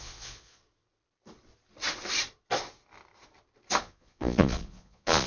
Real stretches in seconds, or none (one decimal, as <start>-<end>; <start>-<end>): 0.6-3.8